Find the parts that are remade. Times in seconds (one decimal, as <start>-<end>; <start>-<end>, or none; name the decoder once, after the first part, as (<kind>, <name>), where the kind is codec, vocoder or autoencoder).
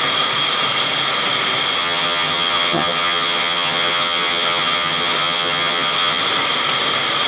1.8-6.2 (vocoder, HiFi-GAN)